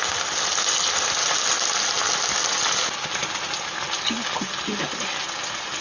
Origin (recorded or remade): recorded